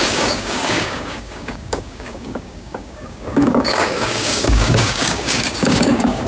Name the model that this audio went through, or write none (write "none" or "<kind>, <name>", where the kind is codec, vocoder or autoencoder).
codec, DAC